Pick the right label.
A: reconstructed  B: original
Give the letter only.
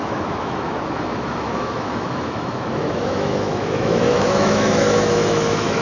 A